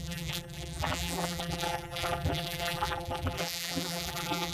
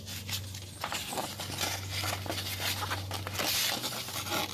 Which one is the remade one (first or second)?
first